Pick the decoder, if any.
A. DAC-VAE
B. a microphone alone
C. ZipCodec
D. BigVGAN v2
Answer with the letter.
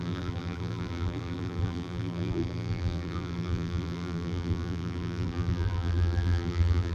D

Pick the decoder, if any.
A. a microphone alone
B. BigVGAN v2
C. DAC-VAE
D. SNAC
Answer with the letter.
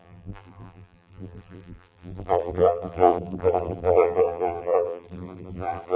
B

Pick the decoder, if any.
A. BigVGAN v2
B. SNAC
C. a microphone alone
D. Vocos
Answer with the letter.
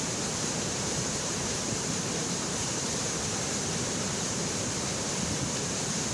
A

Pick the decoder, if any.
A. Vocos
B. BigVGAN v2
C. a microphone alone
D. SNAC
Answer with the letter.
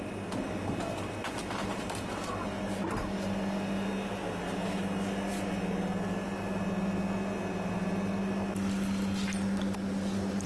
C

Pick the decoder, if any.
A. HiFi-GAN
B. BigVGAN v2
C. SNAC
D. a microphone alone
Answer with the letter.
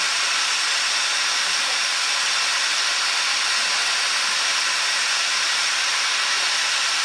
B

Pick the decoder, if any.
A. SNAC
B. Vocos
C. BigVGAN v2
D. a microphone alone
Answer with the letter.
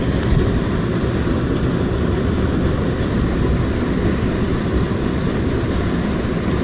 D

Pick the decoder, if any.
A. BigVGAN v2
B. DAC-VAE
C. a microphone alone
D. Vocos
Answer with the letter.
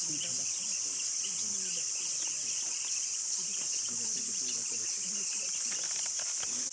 C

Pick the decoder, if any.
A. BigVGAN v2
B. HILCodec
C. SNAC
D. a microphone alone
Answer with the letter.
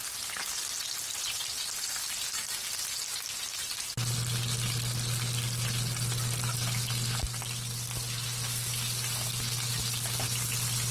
D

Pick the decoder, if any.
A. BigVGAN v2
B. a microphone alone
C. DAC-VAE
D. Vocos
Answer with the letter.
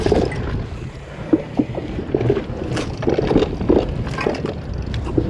B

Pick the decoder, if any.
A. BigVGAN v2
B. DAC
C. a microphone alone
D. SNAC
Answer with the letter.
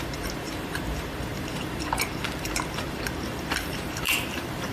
A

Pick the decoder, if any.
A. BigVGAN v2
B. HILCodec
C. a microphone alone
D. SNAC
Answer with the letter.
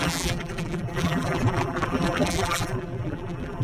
A